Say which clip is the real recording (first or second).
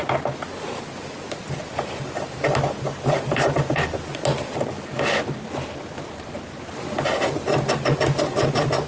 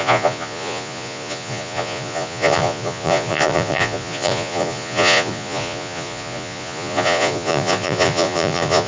first